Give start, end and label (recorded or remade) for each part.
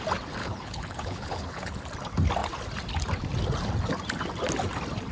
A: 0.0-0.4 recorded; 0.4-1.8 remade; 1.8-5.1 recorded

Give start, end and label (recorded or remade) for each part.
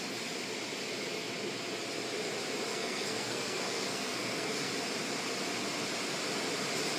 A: 0.0-2.7 recorded; 2.7-4.7 remade; 4.7-7.0 recorded